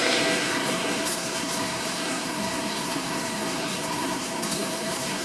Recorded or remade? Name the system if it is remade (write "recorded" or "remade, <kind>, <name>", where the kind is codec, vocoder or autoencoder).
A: remade, codec, SNAC